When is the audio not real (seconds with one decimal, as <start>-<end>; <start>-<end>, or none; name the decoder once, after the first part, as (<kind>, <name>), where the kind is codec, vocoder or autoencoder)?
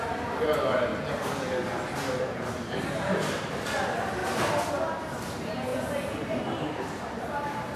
0.0-0.9 (vocoder, BigVGAN v2); 2.2-4.2; 4.7-7.8